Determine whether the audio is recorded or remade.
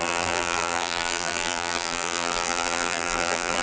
remade